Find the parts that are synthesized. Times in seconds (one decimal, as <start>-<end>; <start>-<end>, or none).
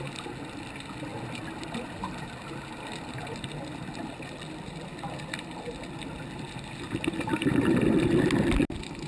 none